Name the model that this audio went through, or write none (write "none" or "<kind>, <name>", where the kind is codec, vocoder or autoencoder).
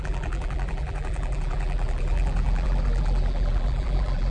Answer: vocoder, BigVGAN v2